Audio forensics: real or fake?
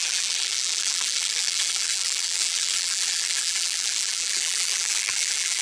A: fake